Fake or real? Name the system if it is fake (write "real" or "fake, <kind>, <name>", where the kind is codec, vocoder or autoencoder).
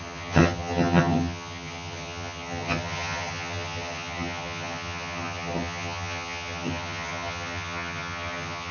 fake, vocoder, HiFi-GAN